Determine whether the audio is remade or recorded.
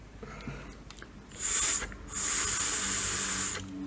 recorded